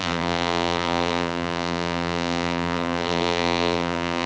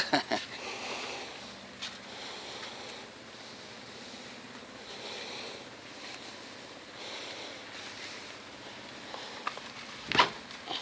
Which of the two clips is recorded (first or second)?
second